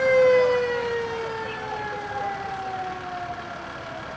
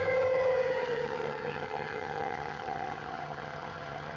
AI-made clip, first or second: second